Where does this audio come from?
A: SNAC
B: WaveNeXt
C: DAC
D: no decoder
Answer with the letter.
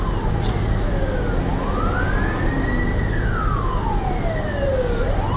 D